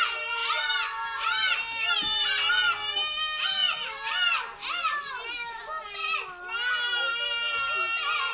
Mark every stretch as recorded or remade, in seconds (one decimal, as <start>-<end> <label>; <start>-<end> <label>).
0.0-8.3 recorded